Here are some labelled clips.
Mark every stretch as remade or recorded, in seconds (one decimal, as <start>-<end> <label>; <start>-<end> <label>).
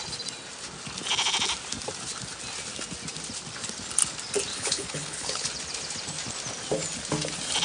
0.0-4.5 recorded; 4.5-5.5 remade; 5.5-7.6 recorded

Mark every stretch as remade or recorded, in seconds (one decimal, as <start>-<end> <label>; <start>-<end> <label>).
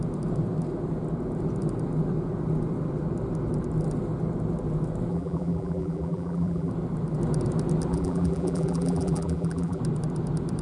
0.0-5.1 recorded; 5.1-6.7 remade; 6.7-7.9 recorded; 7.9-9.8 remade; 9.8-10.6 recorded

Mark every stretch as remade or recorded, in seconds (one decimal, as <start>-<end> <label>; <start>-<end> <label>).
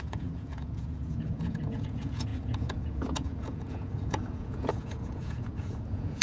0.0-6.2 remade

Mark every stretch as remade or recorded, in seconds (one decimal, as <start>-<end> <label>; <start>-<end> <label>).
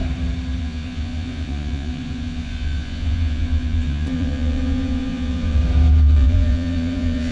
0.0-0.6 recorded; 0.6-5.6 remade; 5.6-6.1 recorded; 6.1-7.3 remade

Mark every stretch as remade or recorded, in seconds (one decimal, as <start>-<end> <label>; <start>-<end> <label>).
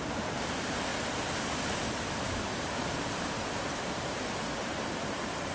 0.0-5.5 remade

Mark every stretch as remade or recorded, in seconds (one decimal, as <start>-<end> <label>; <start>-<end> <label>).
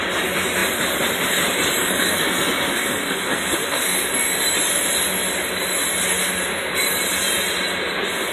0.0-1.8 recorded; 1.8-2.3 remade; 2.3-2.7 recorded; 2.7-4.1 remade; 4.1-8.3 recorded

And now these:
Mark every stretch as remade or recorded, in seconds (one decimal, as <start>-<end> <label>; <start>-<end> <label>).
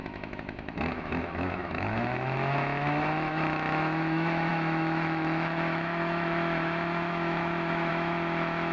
0.0-8.7 remade